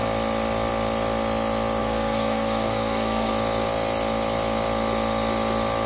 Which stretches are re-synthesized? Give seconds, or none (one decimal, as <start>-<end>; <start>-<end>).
1.8-3.3